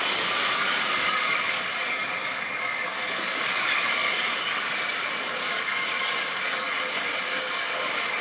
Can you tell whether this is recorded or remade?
remade